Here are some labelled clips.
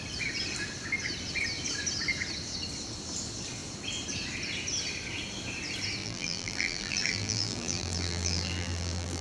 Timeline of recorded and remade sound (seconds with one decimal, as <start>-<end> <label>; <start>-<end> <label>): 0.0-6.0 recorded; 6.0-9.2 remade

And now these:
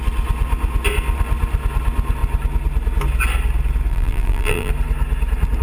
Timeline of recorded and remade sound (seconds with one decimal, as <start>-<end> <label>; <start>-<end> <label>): 0.0-3.9 recorded; 3.9-4.7 remade; 4.7-5.6 recorded

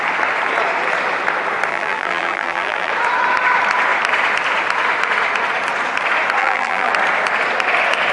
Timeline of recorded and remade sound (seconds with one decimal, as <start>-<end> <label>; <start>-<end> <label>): 0.0-1.7 recorded; 1.7-2.9 remade; 2.9-6.4 recorded; 6.4-6.9 remade; 6.9-8.1 recorded

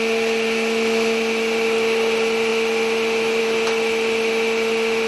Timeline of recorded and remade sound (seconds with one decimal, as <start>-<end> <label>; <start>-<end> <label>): 0.0-5.1 recorded

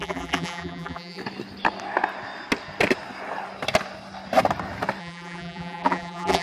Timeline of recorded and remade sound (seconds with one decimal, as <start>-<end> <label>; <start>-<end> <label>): 0.0-1.2 remade; 1.2-5.0 recorded; 5.0-6.4 remade

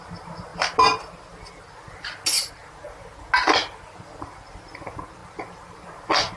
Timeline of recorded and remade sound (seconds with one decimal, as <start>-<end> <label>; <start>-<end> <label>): 0.0-6.4 recorded

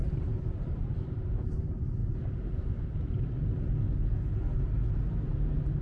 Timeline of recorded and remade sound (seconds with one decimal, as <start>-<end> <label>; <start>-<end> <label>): 0.0-2.0 remade; 2.0-5.8 recorded